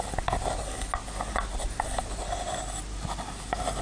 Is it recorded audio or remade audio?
recorded